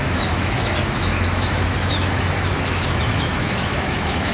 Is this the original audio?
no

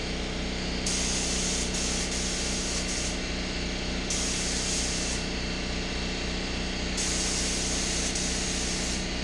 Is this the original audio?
yes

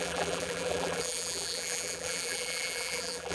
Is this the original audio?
no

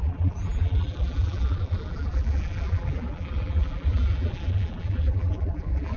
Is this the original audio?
no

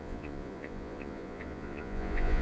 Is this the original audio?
no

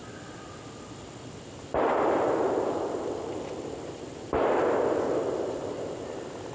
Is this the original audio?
yes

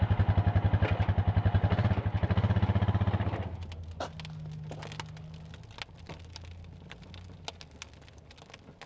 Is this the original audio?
yes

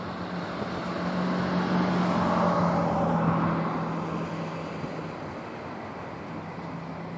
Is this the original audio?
yes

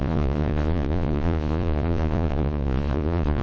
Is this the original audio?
no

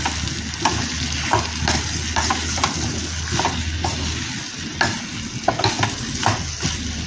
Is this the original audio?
yes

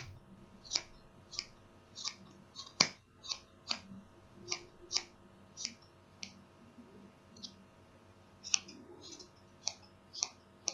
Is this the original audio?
yes